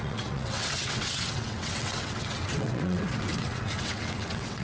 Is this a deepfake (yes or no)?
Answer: yes